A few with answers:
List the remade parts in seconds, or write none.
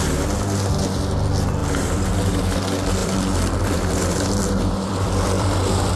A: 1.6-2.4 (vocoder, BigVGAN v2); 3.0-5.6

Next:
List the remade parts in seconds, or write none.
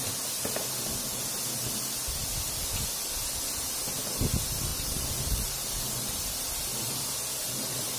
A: 4.7-5.7 (vocoder, BigVGAN v2)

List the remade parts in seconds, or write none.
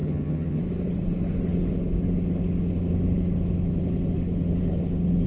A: 0.0-0.6 (vocoder, HiFi-GAN)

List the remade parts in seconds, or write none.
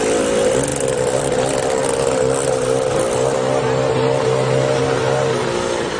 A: none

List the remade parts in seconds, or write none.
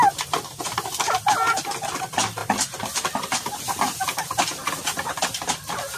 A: 2.4-6.0 (vocoder, BigVGAN v2)